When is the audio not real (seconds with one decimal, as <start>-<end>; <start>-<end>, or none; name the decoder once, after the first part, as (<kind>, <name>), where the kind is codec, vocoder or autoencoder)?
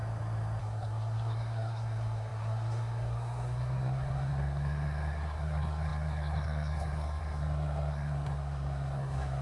0.6-9.4 (codec, SNAC)